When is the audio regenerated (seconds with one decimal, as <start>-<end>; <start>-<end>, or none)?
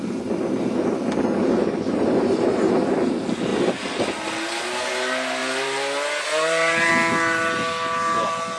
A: 3.5-4.0; 5.4-6.9